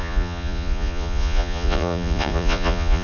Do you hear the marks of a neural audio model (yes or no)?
yes